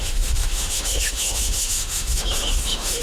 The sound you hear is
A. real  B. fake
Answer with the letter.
B